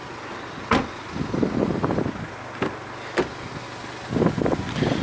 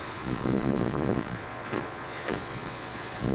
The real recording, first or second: first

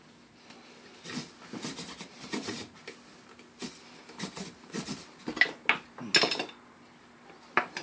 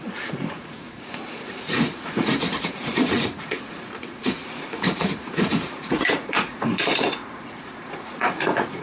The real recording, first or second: first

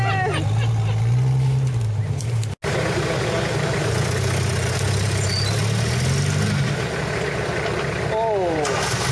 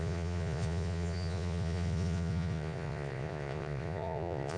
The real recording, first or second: first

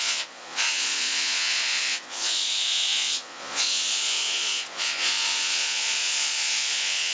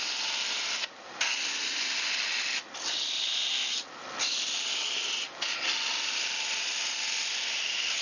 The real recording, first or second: second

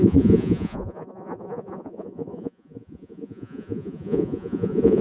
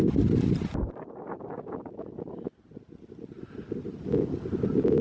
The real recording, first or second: second